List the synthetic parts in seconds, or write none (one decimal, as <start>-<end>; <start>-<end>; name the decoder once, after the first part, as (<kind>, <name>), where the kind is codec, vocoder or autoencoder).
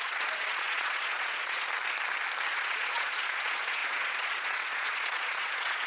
0.0-1.7 (vocoder, Vocos); 2.5-5.9